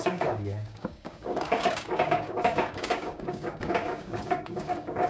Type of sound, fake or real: fake